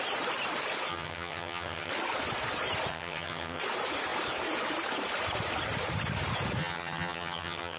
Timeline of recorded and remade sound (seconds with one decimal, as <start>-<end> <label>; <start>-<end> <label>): 0.0-0.9 recorded; 0.9-1.9 remade; 1.9-2.9 recorded; 2.9-3.6 remade; 3.6-6.6 recorded; 6.6-7.8 remade